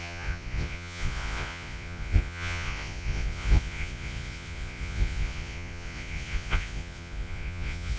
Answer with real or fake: fake